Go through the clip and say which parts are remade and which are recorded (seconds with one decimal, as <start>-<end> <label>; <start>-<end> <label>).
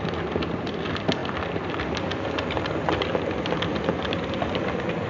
0.0-5.1 recorded